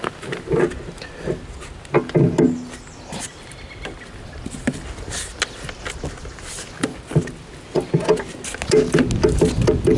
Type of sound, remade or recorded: recorded